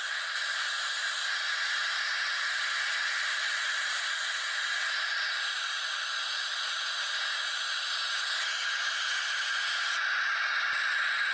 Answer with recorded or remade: recorded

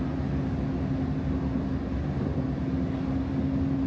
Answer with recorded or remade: recorded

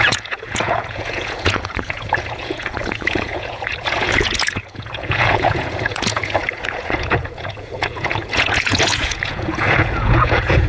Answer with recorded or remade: remade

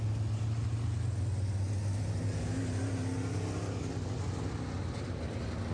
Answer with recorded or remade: recorded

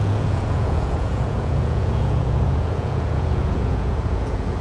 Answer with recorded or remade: remade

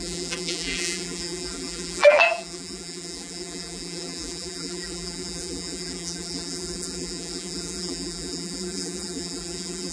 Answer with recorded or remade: remade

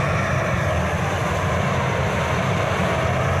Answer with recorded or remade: remade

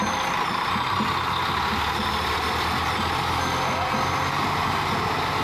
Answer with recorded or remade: recorded